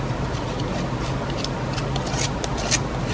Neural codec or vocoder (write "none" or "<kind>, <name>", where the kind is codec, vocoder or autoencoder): none